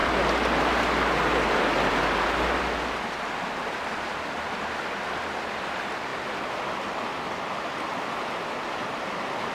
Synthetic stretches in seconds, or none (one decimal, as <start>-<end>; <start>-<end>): none